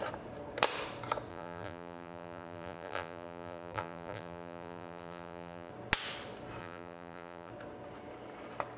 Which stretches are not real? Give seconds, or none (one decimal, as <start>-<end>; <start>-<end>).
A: 1.3-5.7; 6.6-7.5